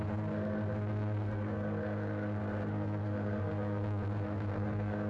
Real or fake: fake